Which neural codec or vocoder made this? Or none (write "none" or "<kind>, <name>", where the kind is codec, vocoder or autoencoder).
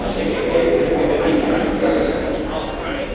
none